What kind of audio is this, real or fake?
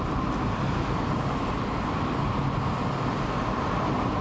real